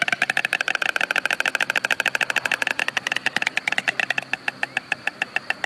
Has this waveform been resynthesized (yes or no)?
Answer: no